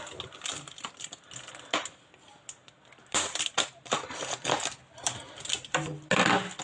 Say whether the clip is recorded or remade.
recorded